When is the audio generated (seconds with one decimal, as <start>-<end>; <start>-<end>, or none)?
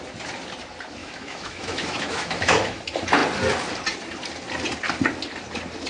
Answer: 1.0-2.8